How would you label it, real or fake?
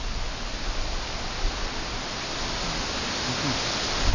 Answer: real